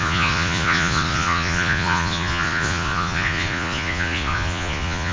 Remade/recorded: remade